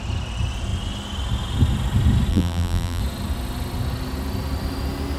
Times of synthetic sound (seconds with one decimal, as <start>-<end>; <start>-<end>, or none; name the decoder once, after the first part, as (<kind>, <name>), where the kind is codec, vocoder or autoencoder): 2.3-3.0 (vocoder, BigVGAN v2)